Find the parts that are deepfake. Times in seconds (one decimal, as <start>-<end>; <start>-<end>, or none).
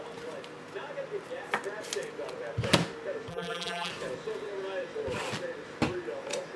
3.3-3.9